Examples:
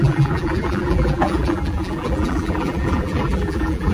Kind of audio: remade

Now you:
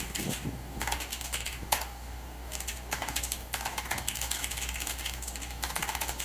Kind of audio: remade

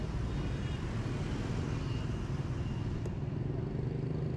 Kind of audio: recorded